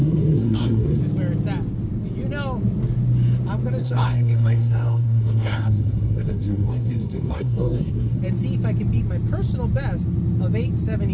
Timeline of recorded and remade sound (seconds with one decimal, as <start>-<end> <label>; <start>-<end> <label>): 0.0-1.0 remade; 1.0-3.8 recorded; 3.8-8.2 remade; 8.2-11.1 recorded